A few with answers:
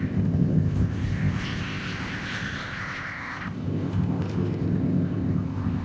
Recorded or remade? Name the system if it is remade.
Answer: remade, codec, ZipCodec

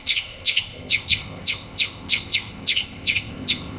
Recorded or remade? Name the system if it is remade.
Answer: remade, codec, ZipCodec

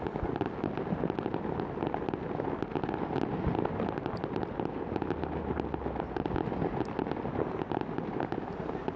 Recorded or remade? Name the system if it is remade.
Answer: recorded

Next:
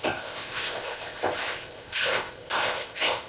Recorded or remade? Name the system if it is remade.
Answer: remade, codec, ZipCodec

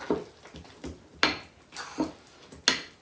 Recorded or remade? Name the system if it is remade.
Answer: recorded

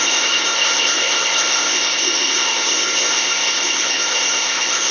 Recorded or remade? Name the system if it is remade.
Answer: remade, codec, ZipCodec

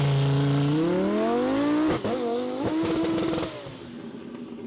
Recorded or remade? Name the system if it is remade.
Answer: recorded